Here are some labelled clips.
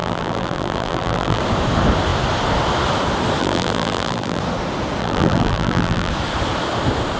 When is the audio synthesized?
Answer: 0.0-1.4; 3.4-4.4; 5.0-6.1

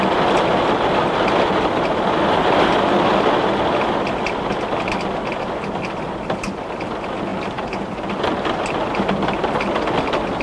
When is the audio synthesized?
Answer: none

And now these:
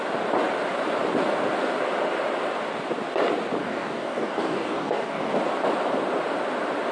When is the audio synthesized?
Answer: 3.6-5.4